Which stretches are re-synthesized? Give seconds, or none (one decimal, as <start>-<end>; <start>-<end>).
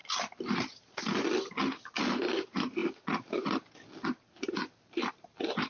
0.0-5.7